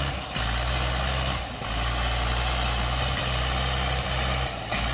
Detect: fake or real real